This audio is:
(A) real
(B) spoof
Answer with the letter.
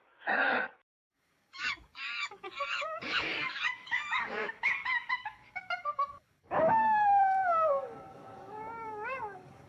B